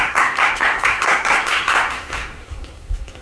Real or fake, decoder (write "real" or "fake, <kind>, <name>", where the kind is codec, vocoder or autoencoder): fake, codec, SNAC